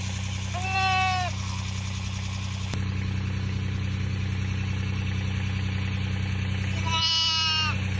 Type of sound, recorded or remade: recorded